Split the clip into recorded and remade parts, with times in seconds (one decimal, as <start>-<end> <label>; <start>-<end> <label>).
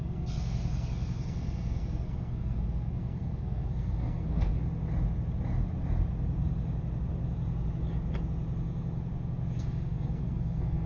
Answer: 0.0-4.6 remade; 4.6-9.6 recorded; 9.6-10.9 remade